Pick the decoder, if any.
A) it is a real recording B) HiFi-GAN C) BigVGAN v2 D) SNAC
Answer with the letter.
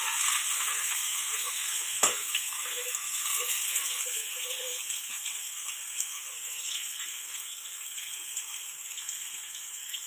D